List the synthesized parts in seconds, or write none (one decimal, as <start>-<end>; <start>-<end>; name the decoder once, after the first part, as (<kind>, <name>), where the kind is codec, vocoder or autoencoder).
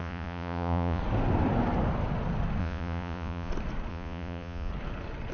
0.0-1.0 (vocoder, Vocos); 2.6-3.5; 3.9-4.7